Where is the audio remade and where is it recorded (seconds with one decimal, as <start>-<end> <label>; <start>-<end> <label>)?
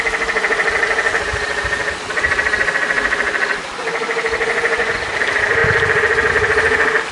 0.0-4.4 recorded; 4.4-5.1 remade; 5.1-7.1 recorded